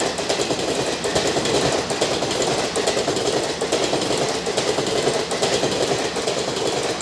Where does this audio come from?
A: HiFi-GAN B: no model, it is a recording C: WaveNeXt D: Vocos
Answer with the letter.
B